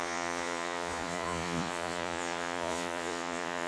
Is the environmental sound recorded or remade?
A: remade